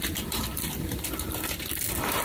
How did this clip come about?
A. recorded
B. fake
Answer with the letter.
B